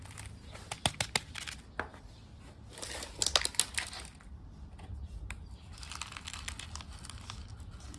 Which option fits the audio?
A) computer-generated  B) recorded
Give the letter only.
B